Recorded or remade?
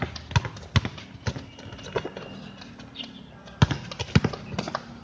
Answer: recorded